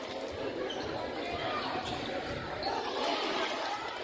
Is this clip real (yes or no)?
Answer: yes